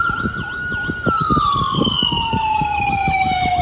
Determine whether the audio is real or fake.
real